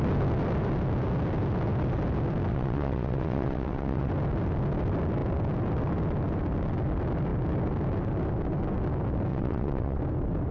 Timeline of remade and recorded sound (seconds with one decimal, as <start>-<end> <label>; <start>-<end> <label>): 0.0-2.5 recorded; 2.5-4.1 remade; 4.1-9.3 recorded; 9.3-10.0 remade; 10.0-10.5 recorded